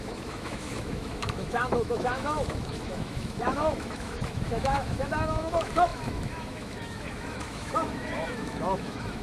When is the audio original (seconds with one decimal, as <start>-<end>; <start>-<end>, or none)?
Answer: none